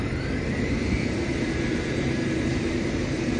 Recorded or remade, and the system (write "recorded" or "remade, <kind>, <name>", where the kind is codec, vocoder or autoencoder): remade, vocoder, BigVGAN v2